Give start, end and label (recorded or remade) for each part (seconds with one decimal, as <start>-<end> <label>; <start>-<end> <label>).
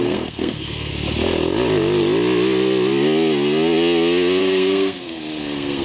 0.0-0.9 remade; 0.9-4.4 recorded; 4.4-5.8 remade